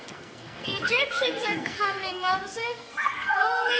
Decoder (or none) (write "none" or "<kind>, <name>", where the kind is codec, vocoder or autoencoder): codec, SNAC